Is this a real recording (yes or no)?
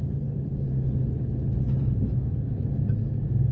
yes